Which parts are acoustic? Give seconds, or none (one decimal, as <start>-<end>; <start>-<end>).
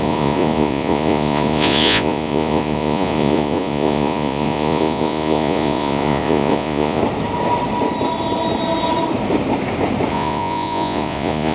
7.0-10.1